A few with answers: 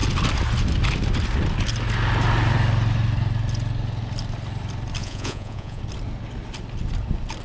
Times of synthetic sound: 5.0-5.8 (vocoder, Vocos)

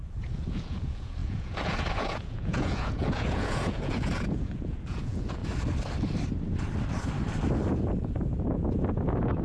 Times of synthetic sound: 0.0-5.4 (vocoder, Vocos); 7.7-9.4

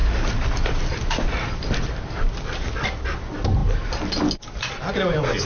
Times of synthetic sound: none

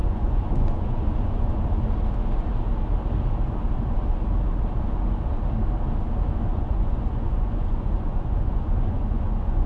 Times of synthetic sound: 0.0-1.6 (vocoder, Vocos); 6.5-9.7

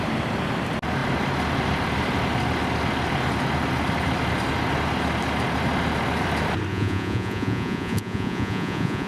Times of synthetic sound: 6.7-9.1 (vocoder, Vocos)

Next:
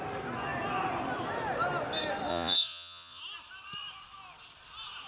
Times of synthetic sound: 2.3-3.2 (vocoder, Vocos)

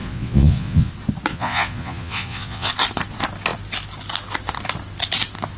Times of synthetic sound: 0.0-0.9 (vocoder, Vocos); 1.3-2.7